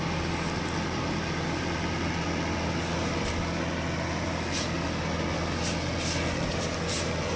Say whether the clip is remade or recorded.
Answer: recorded